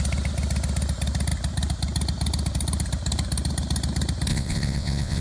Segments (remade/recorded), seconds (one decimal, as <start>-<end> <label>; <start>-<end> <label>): 0.0-4.3 recorded; 4.3-5.2 remade